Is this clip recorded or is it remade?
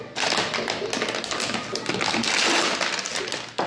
recorded